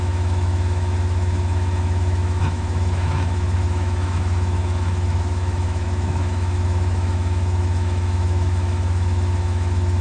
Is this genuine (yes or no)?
no